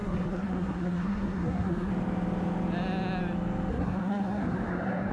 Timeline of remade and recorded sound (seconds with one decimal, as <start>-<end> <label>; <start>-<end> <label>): 0.0-1.9 remade; 1.9-3.7 recorded; 3.7-5.1 remade